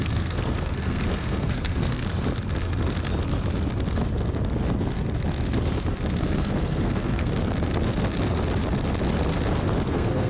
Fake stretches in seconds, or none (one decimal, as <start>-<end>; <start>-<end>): 0.0-2.0; 6.2-7.3; 9.9-10.3

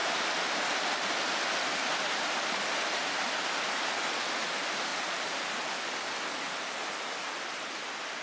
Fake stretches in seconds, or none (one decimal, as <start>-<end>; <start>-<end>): none

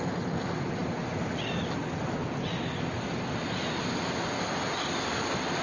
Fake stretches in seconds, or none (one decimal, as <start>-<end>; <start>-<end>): none

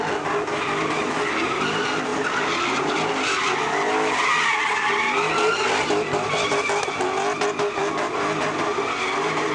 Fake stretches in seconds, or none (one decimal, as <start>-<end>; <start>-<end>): none

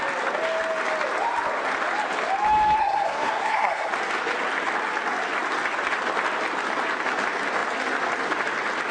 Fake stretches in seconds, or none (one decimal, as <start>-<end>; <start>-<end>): 2.8-3.9